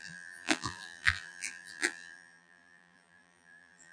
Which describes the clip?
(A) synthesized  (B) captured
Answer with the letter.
A